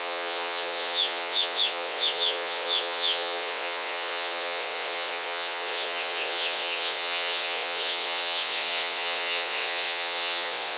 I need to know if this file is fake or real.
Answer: fake